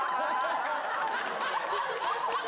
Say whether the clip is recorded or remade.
recorded